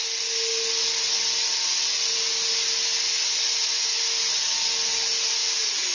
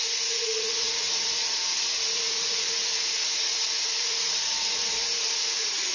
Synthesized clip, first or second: second